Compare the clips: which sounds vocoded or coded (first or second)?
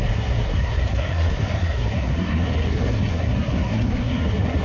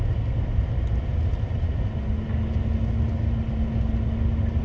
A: first